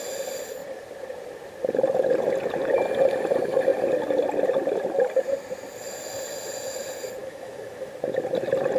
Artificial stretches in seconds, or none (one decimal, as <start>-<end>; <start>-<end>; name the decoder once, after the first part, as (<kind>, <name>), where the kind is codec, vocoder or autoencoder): 7.2-7.9 (autoencoder, DAC-VAE)